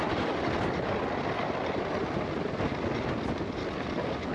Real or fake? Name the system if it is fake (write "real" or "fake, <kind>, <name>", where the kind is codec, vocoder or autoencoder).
real